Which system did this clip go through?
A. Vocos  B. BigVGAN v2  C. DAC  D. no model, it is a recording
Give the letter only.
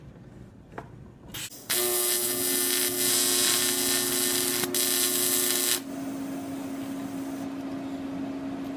D